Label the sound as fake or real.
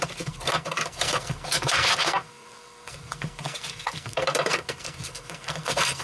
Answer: fake